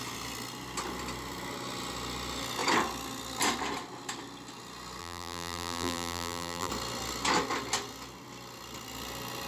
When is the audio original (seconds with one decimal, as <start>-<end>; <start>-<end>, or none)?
0.0-5.0; 6.7-9.5